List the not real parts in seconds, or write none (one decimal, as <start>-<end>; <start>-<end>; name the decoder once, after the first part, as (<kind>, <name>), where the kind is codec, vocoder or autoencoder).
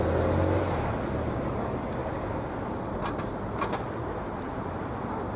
4.0-4.8 (vocoder, BigVGAN v2)